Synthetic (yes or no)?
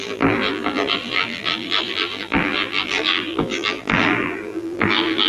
yes